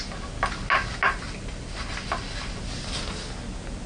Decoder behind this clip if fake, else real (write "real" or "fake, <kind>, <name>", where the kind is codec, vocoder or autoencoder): real